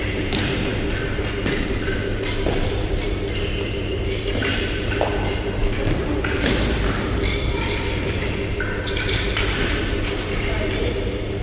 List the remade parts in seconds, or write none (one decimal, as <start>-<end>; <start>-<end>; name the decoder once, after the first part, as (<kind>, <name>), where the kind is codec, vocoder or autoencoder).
0.0-0.7 (vocoder, BigVGAN v2); 1.5-11.4